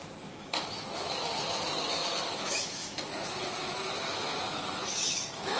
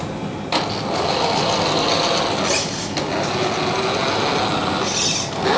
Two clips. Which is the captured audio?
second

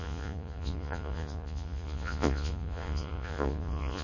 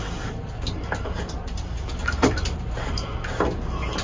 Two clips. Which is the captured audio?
second